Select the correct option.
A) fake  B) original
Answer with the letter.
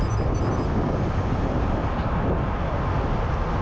B